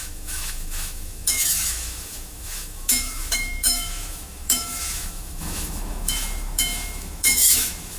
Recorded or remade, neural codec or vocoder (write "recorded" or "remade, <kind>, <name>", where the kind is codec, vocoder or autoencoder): remade, autoencoder, DAC-VAE